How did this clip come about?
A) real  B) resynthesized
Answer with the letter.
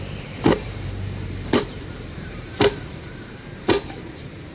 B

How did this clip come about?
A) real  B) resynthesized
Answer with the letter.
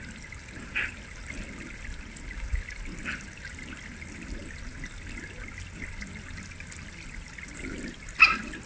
A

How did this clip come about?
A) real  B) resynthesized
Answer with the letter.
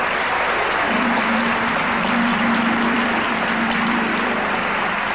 B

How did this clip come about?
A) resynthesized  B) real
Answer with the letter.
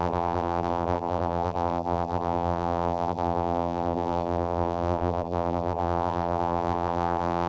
A